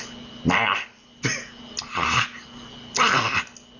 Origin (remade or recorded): recorded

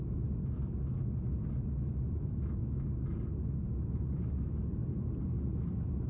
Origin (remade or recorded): recorded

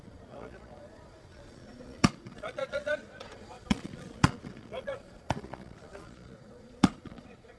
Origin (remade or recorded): remade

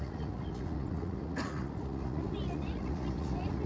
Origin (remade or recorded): remade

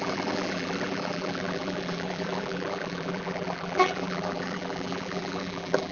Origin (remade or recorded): remade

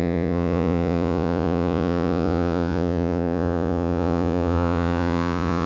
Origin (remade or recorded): remade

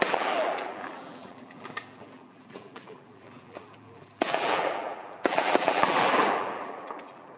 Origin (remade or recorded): remade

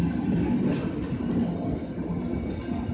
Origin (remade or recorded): recorded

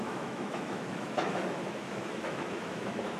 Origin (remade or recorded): remade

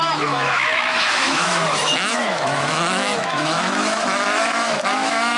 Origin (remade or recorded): remade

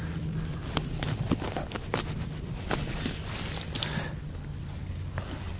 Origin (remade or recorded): recorded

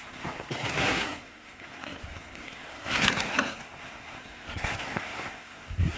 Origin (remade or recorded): remade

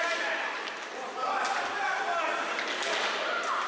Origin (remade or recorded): recorded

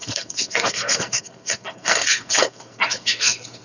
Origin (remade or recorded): remade